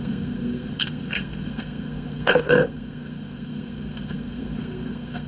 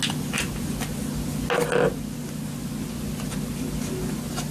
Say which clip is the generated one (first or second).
first